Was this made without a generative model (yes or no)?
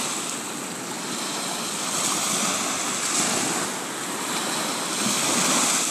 yes